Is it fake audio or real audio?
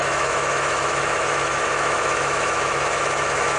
fake